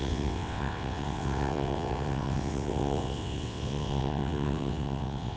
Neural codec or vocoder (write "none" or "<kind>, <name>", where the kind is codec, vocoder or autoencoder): vocoder, WaveNeXt